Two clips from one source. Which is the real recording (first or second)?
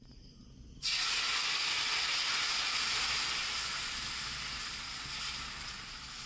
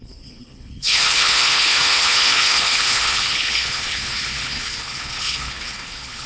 first